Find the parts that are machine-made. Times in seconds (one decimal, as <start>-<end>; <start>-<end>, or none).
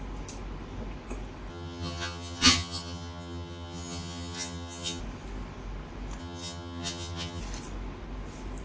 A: 1.5-5.0; 6.2-7.4